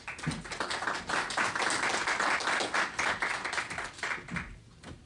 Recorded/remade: recorded